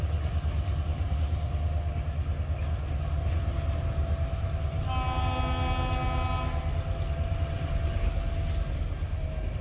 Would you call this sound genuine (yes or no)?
yes